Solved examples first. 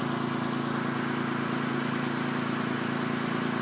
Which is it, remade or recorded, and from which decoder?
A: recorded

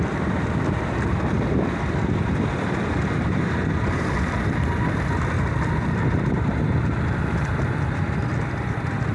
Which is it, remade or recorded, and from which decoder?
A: remade, vocoder, BigVGAN v2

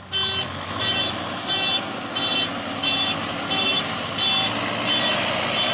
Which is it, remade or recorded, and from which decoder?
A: recorded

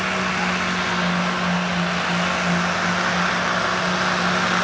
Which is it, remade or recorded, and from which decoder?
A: recorded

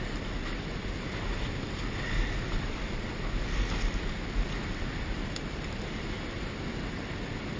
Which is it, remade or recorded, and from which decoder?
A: recorded